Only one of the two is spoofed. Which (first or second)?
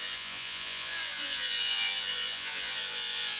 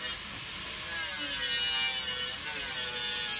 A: first